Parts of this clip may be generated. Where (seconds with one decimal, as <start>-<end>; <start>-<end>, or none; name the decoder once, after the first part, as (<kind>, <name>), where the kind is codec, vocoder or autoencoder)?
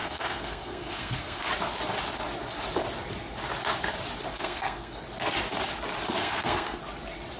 0.0-1.5 (codec, SNAC); 4.3-4.9; 6.2-6.8